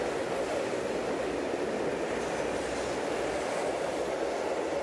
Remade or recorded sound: recorded